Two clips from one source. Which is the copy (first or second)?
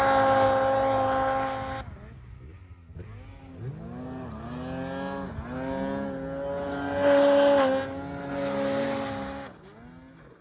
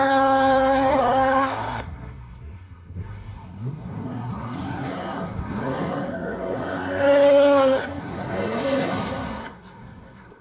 second